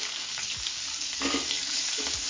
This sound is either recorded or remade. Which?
remade